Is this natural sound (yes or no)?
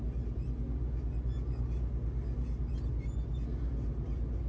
yes